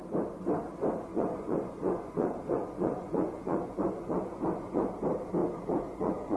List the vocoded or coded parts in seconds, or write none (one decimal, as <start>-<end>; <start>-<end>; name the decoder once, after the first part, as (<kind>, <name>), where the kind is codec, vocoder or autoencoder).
1.1-4.9 (vocoder, Vocos); 5.4-6.4